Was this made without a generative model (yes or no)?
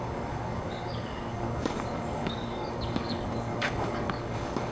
no